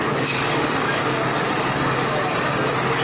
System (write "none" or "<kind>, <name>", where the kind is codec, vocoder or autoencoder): codec, DAC